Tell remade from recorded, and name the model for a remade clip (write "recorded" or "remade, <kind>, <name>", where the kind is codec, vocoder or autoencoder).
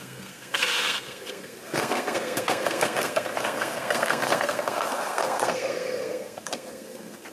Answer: remade, codec, SNAC